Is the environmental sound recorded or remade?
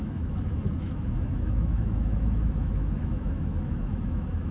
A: remade